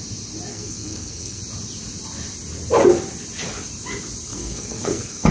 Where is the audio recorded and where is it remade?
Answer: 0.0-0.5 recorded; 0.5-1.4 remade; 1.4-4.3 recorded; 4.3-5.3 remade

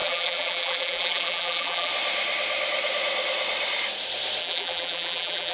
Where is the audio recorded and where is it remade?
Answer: 0.0-1.9 remade; 1.9-4.4 recorded; 4.4-5.5 remade